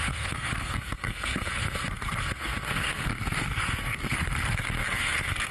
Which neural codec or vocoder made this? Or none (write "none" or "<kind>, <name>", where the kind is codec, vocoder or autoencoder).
codec, SNAC